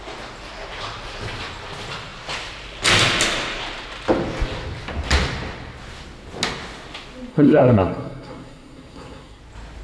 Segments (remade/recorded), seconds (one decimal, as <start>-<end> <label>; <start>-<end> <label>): 0.0-7.3 recorded; 7.3-9.4 remade; 9.4-9.8 recorded